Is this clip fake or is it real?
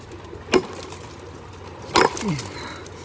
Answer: real